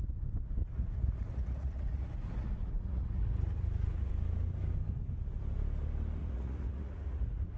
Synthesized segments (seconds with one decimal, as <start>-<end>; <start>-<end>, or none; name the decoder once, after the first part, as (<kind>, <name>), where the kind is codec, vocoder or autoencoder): 0.6-4.1 (vocoder, Vocos); 6.2-7.6